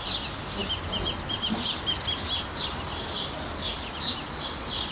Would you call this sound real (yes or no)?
yes